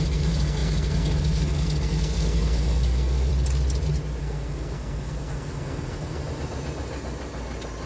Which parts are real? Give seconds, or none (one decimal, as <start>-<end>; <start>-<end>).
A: 3.3-4.2; 6.2-7.9